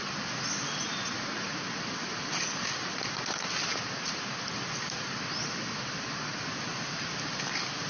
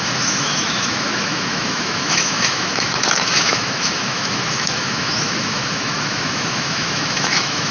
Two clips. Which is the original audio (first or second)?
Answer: first